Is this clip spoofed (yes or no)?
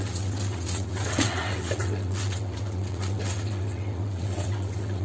yes